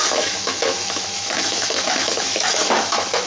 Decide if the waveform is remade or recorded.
remade